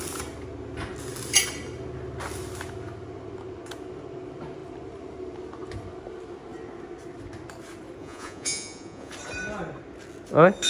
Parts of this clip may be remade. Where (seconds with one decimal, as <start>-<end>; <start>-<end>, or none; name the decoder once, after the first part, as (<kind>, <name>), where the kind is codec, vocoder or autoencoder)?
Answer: 8.0-9.1 (vocoder, Vocos)